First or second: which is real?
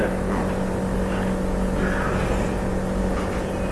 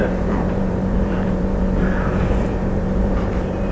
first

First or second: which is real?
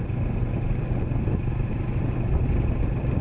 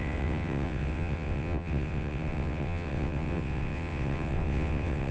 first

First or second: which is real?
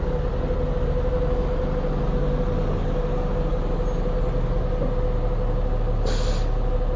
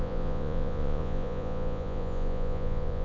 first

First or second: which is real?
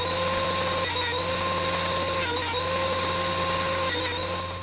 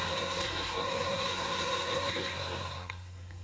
first